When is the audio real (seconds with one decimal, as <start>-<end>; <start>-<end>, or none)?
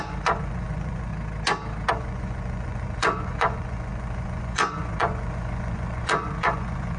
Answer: 1.1-1.9